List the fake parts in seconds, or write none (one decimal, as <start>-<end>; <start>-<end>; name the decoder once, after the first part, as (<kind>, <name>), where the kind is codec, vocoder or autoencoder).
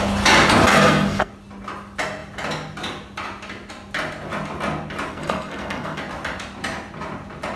0.7-1.3 (codec, SNAC); 5.1-6.0